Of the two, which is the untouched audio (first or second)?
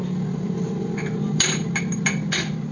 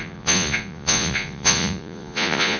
first